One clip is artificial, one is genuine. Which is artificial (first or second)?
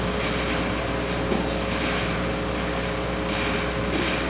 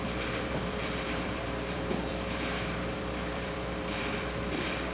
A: second